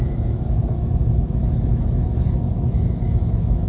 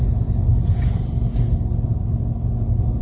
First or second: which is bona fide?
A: second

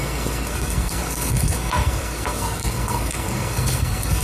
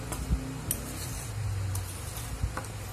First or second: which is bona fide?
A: second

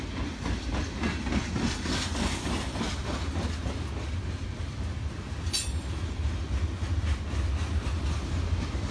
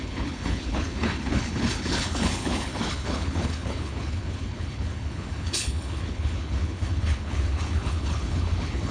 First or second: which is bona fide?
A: first